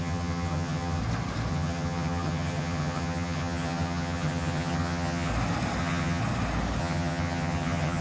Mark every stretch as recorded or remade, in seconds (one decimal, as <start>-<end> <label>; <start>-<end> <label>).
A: 0.0-1.0 remade; 1.0-1.5 recorded; 1.5-5.3 remade; 5.3-5.8 recorded; 5.8-6.2 remade; 6.2-6.8 recorded; 6.8-8.0 remade